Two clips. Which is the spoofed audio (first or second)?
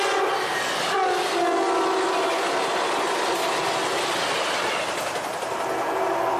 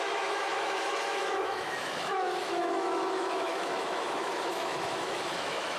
second